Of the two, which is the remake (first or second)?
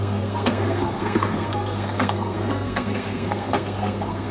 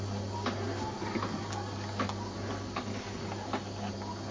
first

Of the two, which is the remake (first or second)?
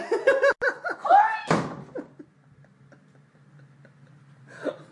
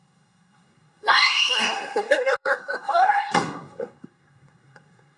second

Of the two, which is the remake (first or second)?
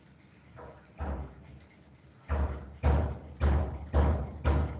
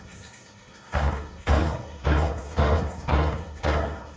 second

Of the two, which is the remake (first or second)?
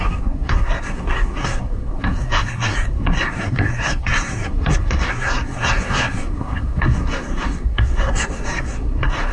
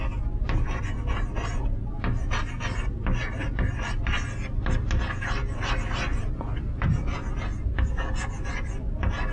first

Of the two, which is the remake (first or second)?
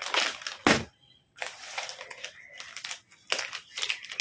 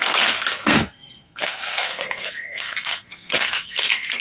second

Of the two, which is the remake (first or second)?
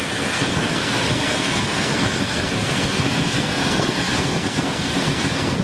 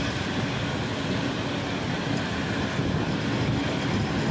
first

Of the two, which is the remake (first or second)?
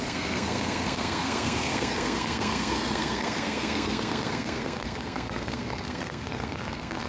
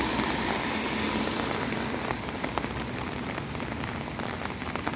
first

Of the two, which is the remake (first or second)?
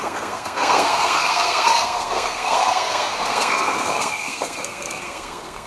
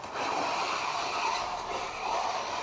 first